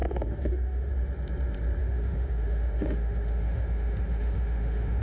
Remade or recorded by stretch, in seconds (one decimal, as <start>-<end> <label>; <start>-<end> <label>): 0.0-0.9 remade; 0.9-1.8 recorded; 1.8-5.0 remade